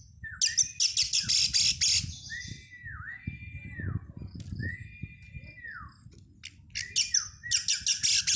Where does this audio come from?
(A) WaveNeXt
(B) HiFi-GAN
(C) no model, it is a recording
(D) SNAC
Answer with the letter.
C